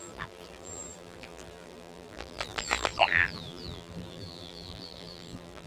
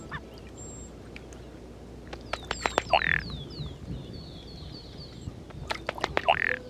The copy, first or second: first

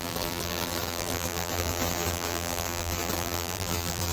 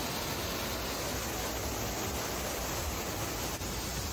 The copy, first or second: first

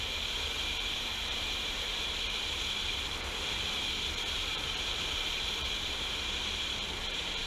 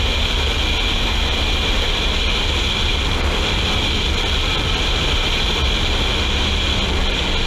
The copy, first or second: first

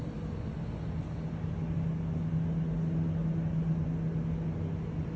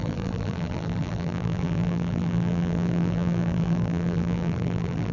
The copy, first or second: second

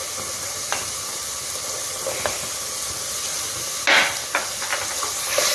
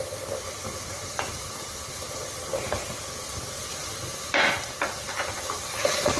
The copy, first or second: second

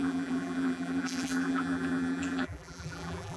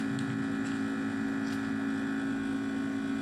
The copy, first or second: first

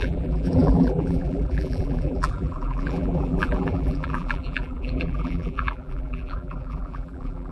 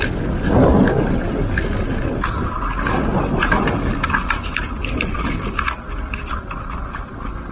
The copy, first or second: first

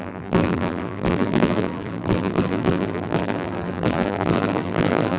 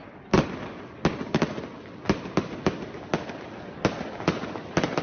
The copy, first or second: first